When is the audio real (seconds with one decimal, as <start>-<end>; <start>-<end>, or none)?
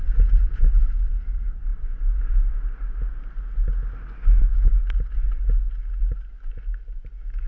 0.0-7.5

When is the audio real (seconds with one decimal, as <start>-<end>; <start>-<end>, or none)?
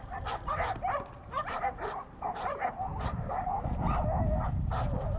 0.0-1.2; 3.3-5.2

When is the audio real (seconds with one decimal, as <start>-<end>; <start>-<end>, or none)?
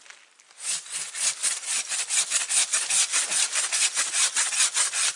0.0-1.4; 4.5-5.2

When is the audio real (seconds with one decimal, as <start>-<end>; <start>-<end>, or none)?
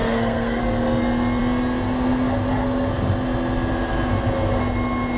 0.6-5.2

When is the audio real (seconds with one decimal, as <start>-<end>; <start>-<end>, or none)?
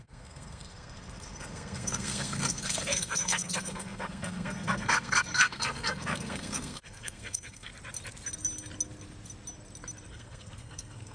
7.7-10.1